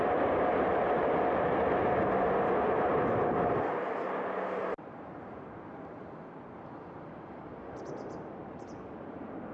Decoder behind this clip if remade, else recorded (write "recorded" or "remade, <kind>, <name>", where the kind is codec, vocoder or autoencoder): recorded